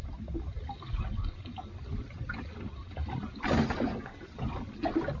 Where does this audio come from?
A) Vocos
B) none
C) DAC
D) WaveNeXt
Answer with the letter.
B